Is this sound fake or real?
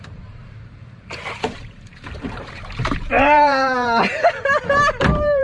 fake